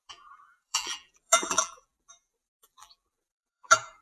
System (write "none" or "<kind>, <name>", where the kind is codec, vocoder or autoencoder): vocoder, BigVGAN v2